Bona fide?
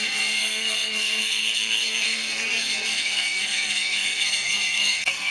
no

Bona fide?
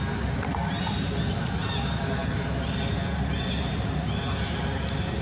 yes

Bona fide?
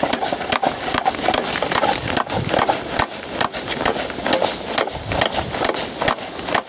yes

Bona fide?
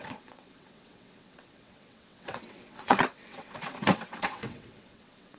no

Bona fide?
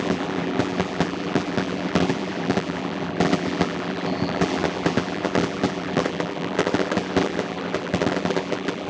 no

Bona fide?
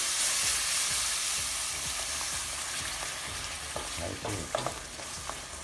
yes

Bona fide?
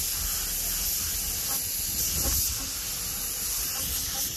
yes